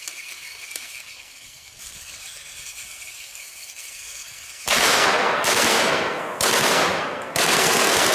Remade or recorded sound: remade